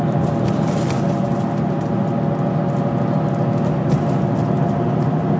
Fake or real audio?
real